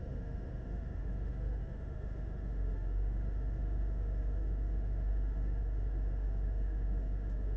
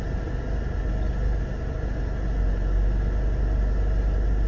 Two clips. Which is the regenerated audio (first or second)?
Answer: first